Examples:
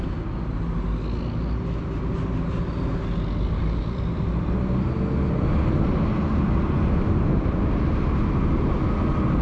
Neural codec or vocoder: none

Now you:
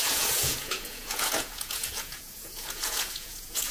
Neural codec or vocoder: vocoder, Vocos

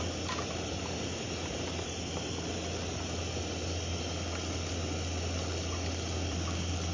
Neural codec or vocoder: none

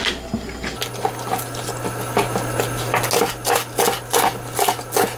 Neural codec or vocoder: none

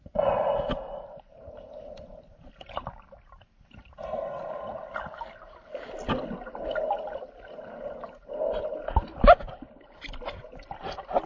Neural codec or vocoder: none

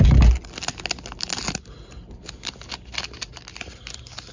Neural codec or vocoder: none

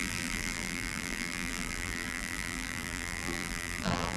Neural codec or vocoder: vocoder, BigVGAN v2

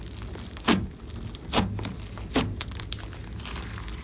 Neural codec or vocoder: none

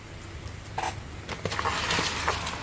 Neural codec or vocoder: none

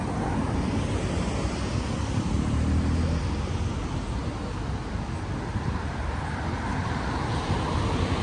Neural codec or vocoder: none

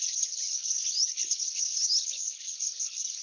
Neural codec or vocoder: codec, HILCodec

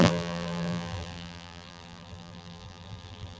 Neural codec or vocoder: vocoder, BigVGAN v2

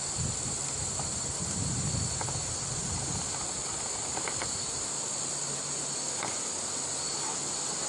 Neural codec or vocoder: none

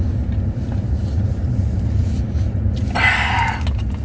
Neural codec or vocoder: none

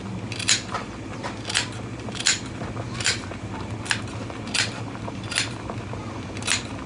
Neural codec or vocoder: none